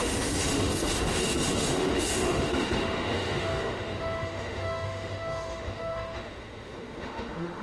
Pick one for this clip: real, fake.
fake